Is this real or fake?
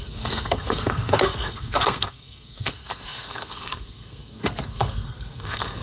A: fake